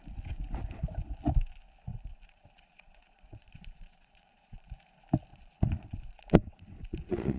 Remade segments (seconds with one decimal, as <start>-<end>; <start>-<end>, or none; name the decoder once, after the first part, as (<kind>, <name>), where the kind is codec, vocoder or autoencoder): 1.9-4.7 (vocoder, Vocos); 5.3-7.4